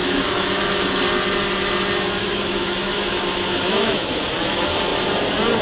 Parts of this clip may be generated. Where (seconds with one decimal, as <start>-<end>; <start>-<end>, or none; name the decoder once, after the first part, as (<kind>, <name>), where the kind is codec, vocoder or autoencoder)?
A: 0.0-0.6 (autoencoder, DAC-VAE); 2.2-4.2